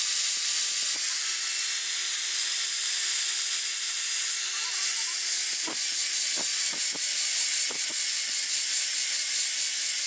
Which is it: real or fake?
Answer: real